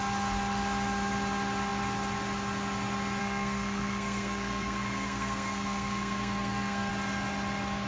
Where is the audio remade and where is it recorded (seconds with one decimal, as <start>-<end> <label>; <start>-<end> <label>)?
0.0-3.2 recorded; 3.2-6.9 remade; 6.9-7.9 recorded